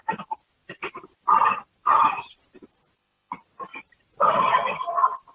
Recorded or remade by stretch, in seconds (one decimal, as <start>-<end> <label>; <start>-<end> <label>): 0.0-3.2 remade; 3.2-3.7 recorded; 3.7-4.3 remade; 4.3-5.3 recorded